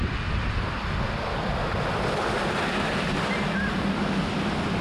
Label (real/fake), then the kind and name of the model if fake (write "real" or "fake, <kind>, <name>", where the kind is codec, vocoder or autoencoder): real